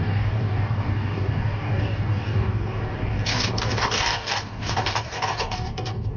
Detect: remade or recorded remade